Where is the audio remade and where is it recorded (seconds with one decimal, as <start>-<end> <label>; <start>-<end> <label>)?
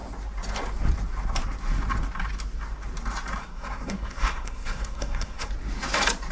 0.0-3.4 recorded; 3.4-5.5 remade; 5.5-6.3 recorded